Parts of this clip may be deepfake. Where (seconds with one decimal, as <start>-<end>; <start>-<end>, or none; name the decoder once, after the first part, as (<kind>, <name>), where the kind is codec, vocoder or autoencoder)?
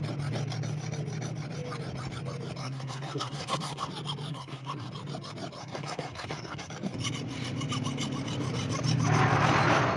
2.6-3.9 (codec, SNAC); 4.3-4.9; 5.6-6.7